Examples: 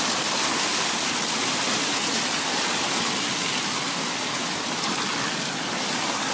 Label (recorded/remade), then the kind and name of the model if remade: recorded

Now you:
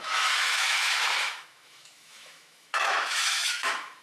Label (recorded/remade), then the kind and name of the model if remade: remade, autoencoder, DAC-VAE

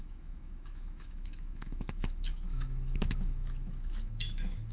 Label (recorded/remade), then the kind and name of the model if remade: remade, autoencoder, DAC-VAE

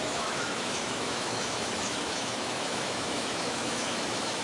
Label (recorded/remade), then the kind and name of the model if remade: remade, autoencoder, DAC-VAE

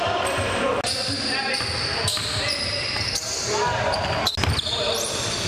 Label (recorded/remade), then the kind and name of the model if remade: recorded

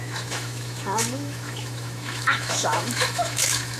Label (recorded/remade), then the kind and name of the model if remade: remade, autoencoder, DAC-VAE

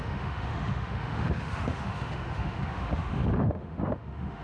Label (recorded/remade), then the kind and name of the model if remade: remade, autoencoder, DAC-VAE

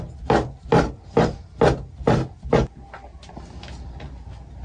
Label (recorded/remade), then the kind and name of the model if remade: recorded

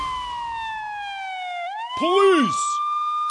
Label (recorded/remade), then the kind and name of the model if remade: recorded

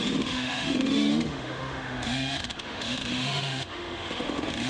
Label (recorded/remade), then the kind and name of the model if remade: remade, autoencoder, DAC-VAE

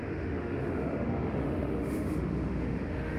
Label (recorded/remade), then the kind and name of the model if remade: remade, autoencoder, DAC-VAE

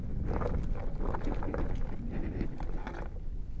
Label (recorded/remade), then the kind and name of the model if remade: recorded